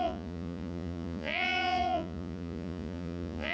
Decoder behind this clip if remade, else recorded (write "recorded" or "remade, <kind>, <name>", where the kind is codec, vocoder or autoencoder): remade, vocoder, Vocos